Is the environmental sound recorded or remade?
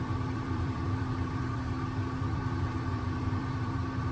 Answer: remade